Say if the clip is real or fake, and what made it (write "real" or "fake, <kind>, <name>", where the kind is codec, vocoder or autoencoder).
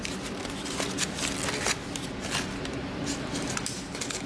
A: real